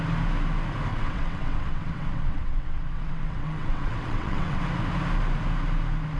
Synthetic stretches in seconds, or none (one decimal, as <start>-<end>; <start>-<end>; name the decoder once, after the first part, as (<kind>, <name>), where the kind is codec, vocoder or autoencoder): 0.9-4.6 (vocoder, WaveNeXt)